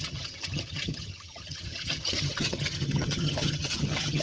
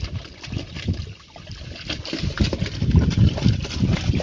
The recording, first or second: second